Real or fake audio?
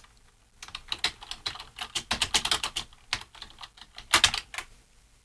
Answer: real